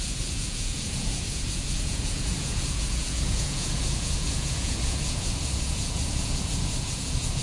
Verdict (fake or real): fake